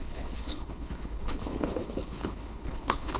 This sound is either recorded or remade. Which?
remade